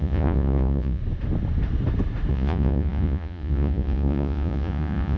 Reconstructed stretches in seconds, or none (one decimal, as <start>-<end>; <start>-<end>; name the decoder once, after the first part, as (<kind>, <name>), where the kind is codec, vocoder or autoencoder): 0.0-1.0 (vocoder, Vocos); 2.3-5.2